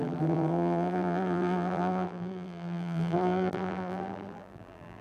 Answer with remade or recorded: remade